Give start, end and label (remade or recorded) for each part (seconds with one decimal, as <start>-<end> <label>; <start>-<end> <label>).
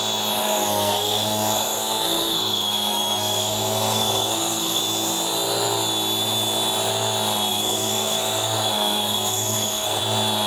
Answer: 0.0-0.4 recorded; 0.4-4.8 remade; 4.8-7.5 recorded; 7.5-10.0 remade; 10.0-10.5 recorded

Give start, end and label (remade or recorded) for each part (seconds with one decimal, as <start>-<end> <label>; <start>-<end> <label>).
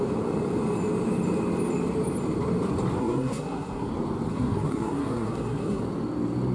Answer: 0.0-3.0 recorded; 3.0-3.9 remade; 3.9-4.3 recorded; 4.3-5.8 remade; 5.8-6.5 recorded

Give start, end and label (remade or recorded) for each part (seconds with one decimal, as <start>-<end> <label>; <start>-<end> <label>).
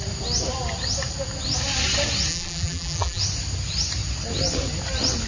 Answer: 0.0-2.3 recorded; 2.3-3.2 remade; 3.2-5.3 recorded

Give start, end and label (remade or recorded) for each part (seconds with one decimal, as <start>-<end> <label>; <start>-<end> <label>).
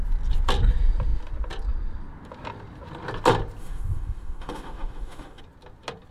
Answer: 0.0-3.6 recorded; 3.6-5.4 remade; 5.4-6.1 recorded